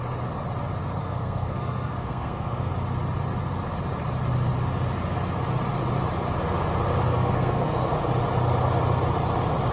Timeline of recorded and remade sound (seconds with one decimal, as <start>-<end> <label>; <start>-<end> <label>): 0.0-1.0 recorded; 1.0-2.7 remade; 2.7-7.1 recorded; 7.1-7.9 remade; 7.9-9.7 recorded